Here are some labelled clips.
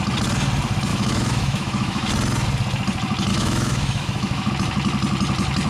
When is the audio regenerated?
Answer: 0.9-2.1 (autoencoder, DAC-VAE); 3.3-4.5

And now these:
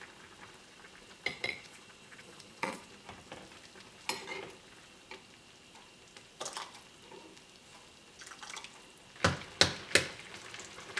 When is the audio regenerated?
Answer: 1.3-2.9 (vocoder, Vocos)

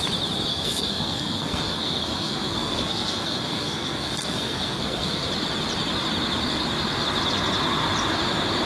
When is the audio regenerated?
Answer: 0.5-5.3 (codec, SNAC)

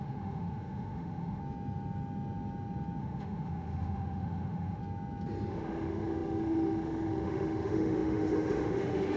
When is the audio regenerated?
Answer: 0.0-1.4 (autoencoder, DAC-VAE); 3.0-4.8; 5.5-9.2

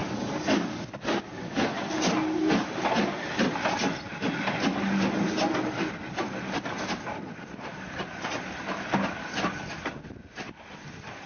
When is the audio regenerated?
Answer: none

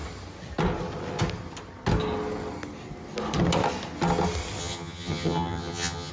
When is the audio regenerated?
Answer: 4.6-6.1 (vocoder, HiFi-GAN)